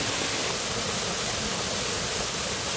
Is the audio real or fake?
real